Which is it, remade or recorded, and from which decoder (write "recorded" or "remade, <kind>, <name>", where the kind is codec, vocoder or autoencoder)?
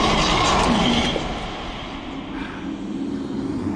recorded